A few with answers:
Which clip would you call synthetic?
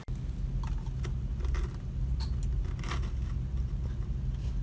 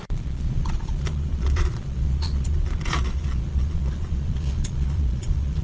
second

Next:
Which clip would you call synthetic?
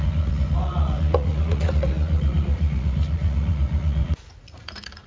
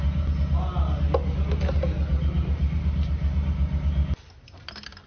first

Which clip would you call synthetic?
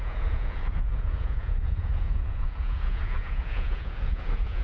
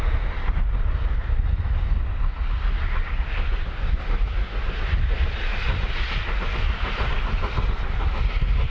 first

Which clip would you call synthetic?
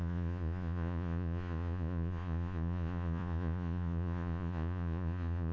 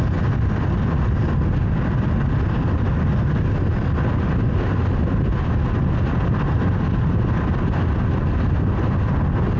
first